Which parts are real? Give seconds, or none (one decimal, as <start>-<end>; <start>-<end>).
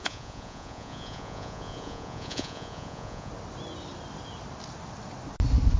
3.3-5.8